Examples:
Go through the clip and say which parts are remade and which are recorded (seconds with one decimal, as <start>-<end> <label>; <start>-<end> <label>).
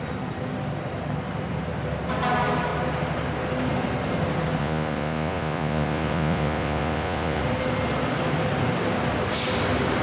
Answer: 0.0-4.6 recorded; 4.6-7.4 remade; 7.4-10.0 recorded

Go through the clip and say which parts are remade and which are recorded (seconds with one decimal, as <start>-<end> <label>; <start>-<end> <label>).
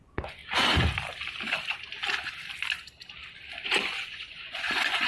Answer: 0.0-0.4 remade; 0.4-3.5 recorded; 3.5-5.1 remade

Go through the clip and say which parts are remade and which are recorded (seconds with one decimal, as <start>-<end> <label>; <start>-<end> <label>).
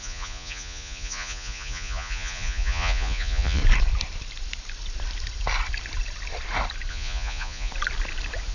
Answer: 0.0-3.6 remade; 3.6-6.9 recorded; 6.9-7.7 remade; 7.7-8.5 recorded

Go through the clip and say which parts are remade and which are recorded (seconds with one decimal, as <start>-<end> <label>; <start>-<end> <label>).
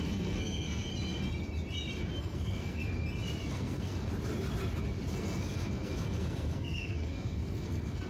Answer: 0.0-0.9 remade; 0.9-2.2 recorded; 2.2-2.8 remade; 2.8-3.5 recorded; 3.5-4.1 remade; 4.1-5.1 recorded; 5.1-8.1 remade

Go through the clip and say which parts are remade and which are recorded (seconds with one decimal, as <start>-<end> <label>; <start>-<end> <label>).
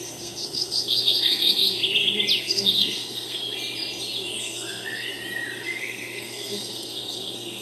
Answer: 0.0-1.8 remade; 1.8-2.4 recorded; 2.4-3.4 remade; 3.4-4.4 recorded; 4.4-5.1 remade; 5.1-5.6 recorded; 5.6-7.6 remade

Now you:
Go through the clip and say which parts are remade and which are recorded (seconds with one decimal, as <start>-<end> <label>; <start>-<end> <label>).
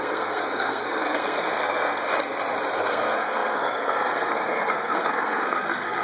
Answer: 0.0-2.1 remade; 2.1-2.9 recorded; 2.9-6.0 remade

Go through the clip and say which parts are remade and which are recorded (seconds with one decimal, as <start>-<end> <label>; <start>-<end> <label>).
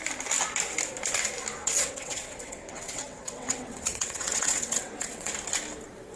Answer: 0.0-1.6 recorded; 1.6-5.3 remade; 5.3-6.2 recorded